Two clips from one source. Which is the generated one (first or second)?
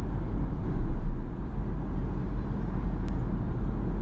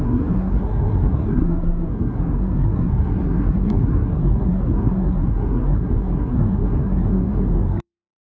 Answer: second